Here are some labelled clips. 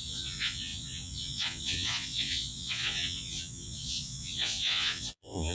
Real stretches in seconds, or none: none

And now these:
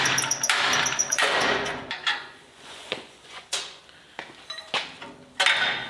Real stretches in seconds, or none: 0.0-1.0; 3.8-5.9

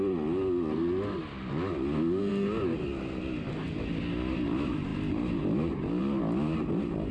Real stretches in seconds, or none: 0.0-7.1

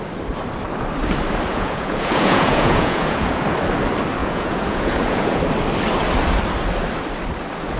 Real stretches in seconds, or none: 0.0-1.5; 3.4-4.2; 5.4-7.8

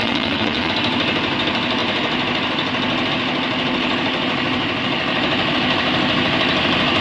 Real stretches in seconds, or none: 0.7-7.0